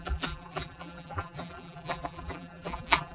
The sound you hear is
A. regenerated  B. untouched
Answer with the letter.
A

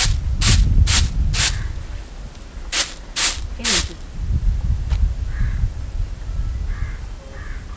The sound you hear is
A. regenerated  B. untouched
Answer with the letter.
B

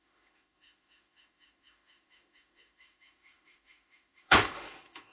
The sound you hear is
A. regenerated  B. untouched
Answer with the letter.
A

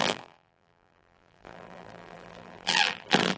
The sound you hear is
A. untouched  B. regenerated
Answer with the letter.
B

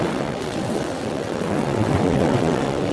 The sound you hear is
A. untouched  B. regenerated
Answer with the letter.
B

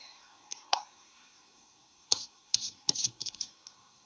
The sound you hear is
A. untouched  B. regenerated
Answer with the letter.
B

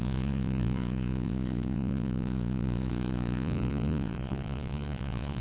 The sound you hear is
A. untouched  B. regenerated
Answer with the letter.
B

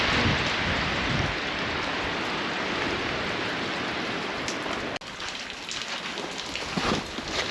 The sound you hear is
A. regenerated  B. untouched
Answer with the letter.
B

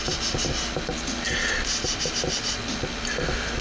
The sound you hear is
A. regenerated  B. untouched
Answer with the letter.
B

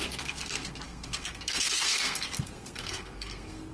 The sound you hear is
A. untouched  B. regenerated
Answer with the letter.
B